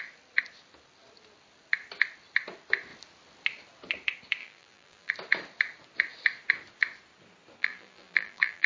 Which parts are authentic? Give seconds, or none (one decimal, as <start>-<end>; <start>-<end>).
0.0-4.4; 5.1-7.6